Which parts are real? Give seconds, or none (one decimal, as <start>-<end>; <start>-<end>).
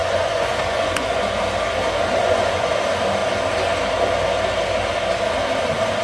1.4-2.2; 2.7-6.0